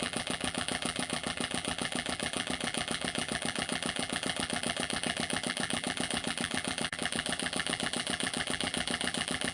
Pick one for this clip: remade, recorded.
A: remade